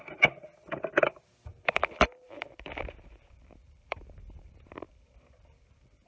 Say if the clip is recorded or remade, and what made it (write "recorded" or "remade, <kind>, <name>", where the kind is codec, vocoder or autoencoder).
remade, vocoder, BigVGAN v2